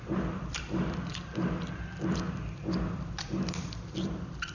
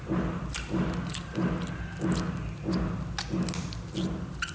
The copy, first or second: first